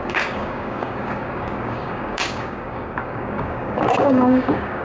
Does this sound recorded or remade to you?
remade